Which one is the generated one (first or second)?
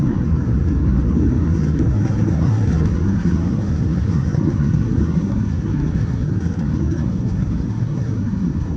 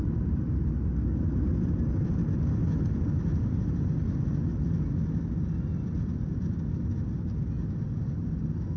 first